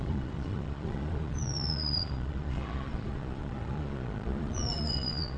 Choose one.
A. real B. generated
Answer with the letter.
B